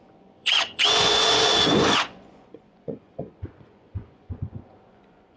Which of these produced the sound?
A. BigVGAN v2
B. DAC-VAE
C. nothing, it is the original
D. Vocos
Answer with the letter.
D